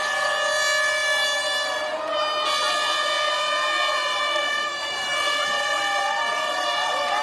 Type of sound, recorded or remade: recorded